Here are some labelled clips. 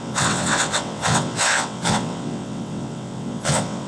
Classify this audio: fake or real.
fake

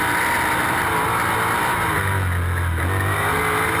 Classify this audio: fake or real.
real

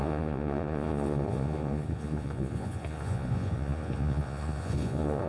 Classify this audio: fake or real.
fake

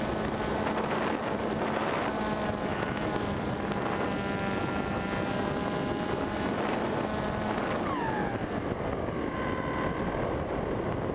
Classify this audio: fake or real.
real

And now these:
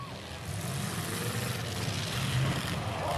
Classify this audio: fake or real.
real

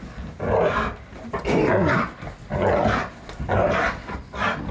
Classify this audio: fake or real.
real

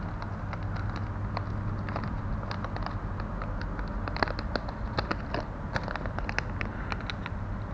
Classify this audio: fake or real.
real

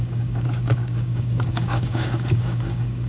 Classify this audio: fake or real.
fake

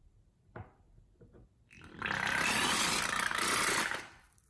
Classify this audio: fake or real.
fake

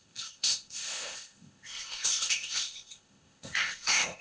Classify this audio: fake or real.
fake